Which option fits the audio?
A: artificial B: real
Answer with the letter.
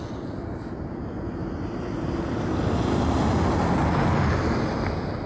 B